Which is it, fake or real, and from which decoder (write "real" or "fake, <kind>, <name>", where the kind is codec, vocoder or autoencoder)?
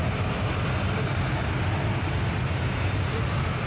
real